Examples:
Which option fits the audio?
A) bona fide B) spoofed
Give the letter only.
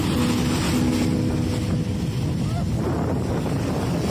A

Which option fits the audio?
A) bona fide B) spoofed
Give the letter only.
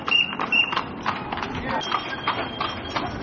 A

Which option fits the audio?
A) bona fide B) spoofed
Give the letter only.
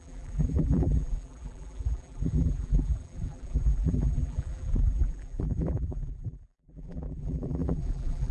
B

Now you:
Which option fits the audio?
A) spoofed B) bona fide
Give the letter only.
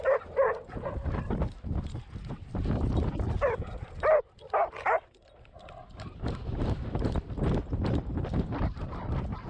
B